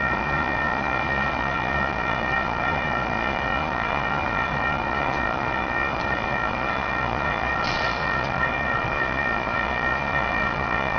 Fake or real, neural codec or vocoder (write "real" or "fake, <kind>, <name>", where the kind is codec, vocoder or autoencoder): fake, vocoder, Vocos